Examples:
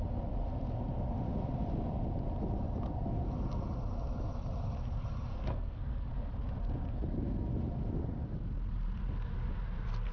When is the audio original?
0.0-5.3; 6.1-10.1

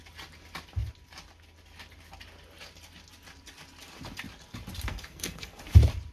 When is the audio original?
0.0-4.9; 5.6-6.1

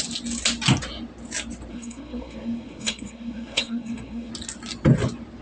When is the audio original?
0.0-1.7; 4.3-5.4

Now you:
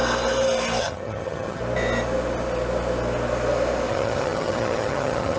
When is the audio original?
0.0-0.8; 1.6-3.9

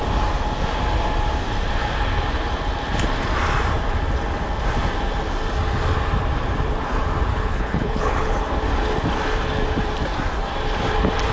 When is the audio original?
0.0-7.3; 8.4-11.3

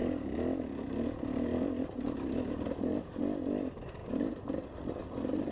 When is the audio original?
0.0-4.0; 4.9-5.5

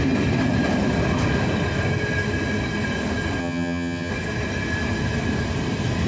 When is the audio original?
0.0-3.4; 4.1-6.1

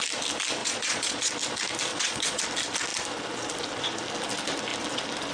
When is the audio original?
0.0-0.6; 1.3-1.9; 2.4-5.3